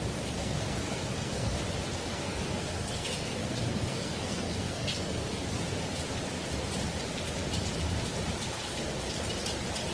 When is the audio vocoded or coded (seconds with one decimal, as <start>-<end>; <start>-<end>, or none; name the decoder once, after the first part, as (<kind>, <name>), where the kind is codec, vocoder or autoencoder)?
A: 0.4-1.6 (codec, SNAC); 2.1-5.6